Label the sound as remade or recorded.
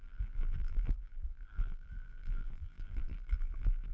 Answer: remade